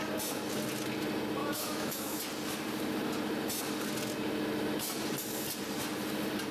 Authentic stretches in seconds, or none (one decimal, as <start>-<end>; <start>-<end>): 0.0-1.4; 2.2-6.5